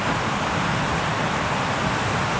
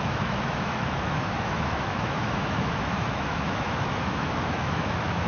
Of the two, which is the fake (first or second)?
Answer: second